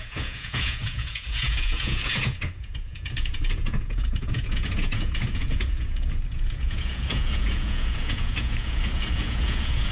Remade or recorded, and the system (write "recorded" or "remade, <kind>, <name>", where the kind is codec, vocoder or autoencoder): remade, vocoder, Vocos